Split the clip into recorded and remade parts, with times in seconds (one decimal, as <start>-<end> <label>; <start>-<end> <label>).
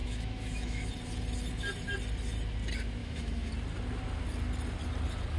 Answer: 0.0-0.9 remade; 0.9-3.0 recorded; 3.0-3.5 remade; 3.5-5.4 recorded